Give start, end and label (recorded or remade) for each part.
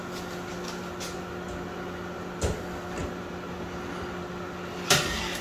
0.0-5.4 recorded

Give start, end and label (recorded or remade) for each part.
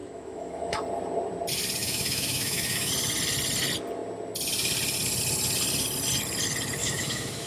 0.0-0.8 remade; 0.8-1.8 recorded; 1.8-2.9 remade; 2.9-6.8 recorded; 6.8-7.5 remade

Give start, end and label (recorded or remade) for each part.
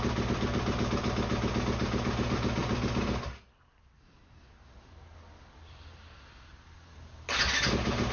0.0-8.1 recorded